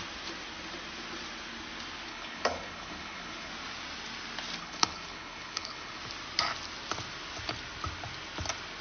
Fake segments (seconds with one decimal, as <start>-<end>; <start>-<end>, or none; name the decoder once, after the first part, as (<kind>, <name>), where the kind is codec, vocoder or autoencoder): 2.1-3.5 (codec, HILCodec); 4.6-6.0